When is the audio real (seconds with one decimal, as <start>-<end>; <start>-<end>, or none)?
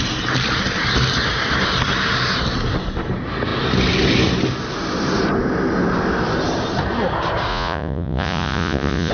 0.0-7.5